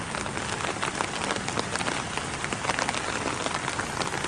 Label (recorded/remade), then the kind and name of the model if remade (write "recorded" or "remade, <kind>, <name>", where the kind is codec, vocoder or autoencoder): recorded